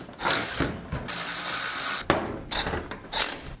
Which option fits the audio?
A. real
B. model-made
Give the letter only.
A